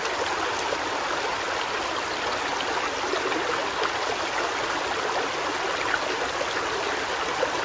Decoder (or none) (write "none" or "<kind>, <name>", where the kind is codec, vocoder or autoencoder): none